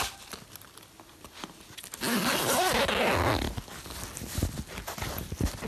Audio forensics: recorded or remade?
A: recorded